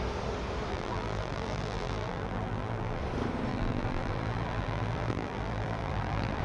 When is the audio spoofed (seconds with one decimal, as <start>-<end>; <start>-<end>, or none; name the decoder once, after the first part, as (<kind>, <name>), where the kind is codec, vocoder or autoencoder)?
0.7-3.0 (vocoder, BigVGAN v2); 3.5-6.4